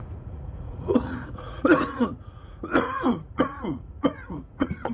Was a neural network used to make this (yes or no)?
yes